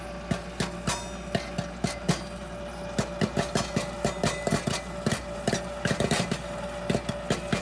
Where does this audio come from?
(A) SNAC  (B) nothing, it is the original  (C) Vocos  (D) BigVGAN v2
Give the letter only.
B